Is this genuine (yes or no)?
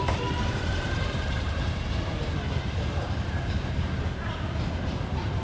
no